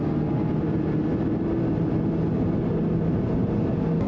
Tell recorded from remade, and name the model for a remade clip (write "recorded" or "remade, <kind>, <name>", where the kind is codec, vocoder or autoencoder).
recorded